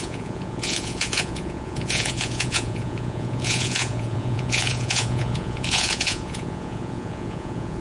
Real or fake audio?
fake